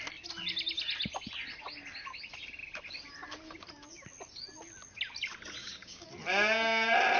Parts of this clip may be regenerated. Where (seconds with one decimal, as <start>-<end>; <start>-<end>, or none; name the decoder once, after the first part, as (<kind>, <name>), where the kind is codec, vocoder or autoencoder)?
5.6-6.1 (codec, DAC)